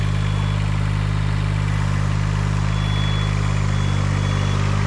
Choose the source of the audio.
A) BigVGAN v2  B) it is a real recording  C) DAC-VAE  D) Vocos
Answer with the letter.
B